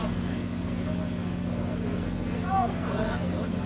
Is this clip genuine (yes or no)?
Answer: no